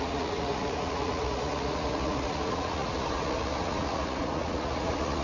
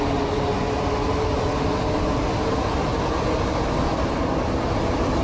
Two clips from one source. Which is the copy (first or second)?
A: first